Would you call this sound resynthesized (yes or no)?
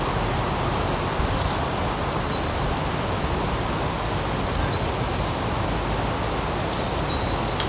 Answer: no